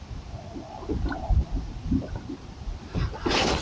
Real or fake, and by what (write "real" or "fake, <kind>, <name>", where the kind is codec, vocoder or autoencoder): fake, vocoder, BigVGAN v2